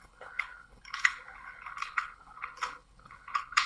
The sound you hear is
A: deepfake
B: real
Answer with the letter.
A